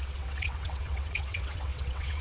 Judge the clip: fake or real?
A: fake